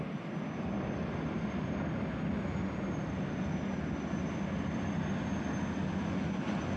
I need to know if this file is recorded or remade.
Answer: recorded